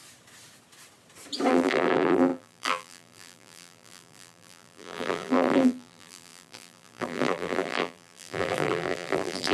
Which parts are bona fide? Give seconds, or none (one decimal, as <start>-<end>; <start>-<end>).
0.0-1.5